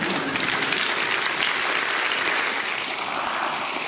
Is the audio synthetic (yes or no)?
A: no